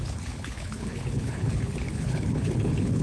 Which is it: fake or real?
fake